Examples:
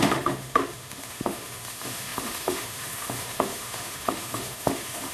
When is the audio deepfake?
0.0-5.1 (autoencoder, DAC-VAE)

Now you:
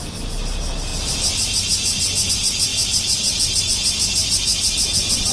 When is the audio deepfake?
none

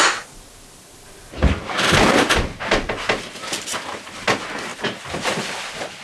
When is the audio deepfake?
none

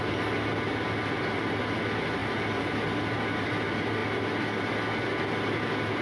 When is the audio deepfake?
none

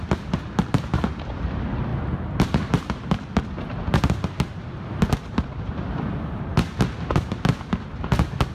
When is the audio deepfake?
none

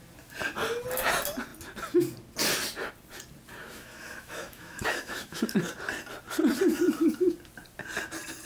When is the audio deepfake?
3.6-5.4 (autoencoder, DAC-VAE)